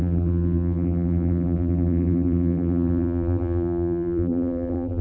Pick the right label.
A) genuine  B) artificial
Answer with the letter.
B